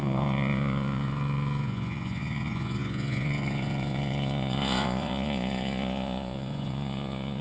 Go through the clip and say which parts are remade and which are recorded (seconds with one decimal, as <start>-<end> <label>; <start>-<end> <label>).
0.0-7.4 remade